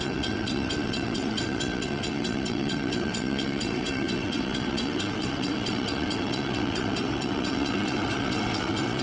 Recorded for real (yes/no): no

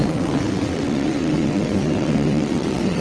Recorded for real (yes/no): no